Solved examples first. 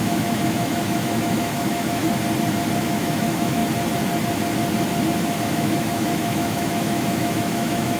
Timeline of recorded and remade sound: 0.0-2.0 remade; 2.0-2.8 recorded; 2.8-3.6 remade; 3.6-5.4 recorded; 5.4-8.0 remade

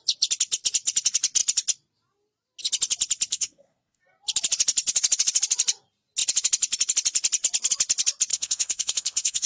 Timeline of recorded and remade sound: 0.0-3.3 recorded; 3.3-4.0 remade; 4.0-8.3 recorded; 8.3-9.5 remade

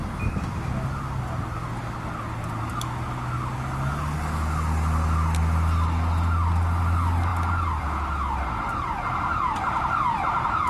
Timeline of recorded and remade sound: 0.0-10.7 recorded

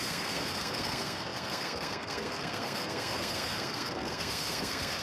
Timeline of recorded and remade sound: 0.0-5.0 remade

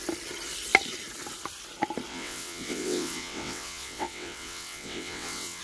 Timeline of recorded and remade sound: 0.0-2.1 recorded; 2.1-5.6 remade